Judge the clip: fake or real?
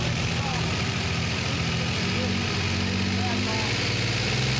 real